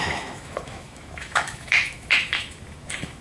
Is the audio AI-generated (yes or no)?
yes